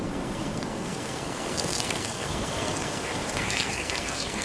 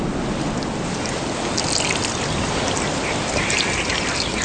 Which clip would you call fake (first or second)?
first